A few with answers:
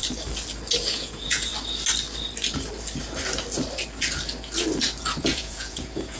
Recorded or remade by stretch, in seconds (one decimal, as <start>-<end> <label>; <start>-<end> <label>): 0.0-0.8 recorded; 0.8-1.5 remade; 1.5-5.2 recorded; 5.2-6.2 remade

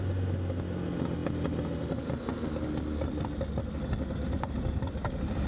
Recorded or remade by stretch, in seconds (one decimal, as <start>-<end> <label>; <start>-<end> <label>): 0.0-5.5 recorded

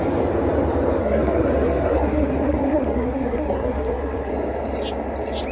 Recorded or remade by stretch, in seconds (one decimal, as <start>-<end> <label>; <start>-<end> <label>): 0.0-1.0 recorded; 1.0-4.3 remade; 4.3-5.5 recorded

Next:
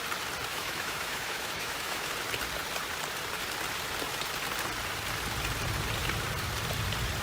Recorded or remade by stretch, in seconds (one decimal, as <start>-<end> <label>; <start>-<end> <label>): 0.0-0.5 recorded; 0.5-2.1 remade; 2.1-7.2 recorded